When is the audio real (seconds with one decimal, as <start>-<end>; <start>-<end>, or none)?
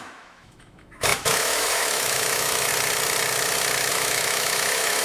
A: 2.7-3.9